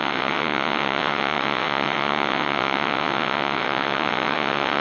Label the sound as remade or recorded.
remade